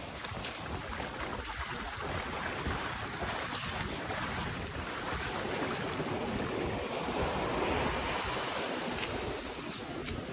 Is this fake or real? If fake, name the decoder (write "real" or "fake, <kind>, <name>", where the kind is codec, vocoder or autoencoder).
real